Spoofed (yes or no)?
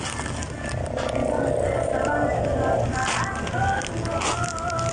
no